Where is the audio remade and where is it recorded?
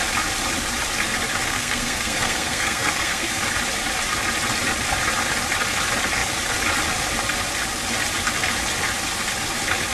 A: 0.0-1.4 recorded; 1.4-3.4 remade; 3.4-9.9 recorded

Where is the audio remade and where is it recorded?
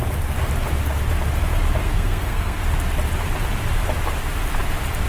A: 0.0-1.8 recorded; 1.8-2.6 remade; 2.6-5.1 recorded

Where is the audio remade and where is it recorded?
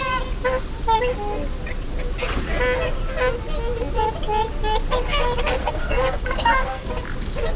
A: 0.0-5.6 recorded; 5.6-6.9 remade; 6.9-7.6 recorded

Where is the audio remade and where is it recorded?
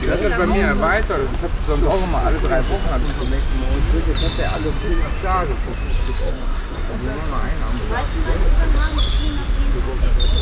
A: 0.0-6.3 recorded; 6.3-6.9 remade; 6.9-10.4 recorded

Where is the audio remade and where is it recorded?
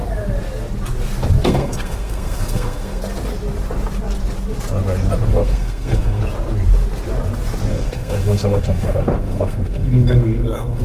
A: 0.0-1.4 recorded; 1.4-3.0 remade; 3.0-5.3 recorded; 5.3-6.2 remade; 6.2-7.7 recorded; 7.7-10.8 remade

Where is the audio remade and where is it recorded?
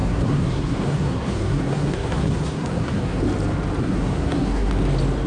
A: 0.0-3.2 remade; 3.2-3.8 recorded; 3.8-4.7 remade; 4.7-5.3 recorded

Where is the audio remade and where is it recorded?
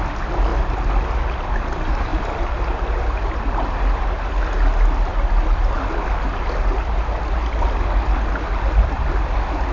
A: 0.0-9.7 recorded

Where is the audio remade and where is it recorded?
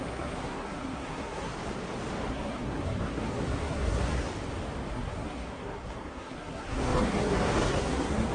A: 0.0-1.5 remade; 1.5-2.3 recorded; 2.3-4.3 remade; 4.3-4.9 recorded; 4.9-8.3 remade